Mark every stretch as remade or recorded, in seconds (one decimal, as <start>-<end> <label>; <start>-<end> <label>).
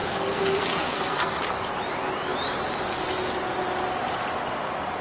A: 0.0-1.4 remade; 1.4-5.0 recorded